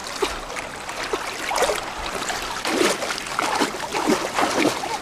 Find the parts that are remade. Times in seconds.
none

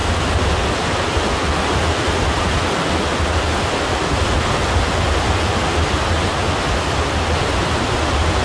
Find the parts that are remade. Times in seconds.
none